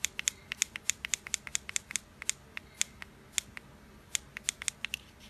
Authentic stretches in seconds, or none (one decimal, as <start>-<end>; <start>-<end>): 0.0-5.3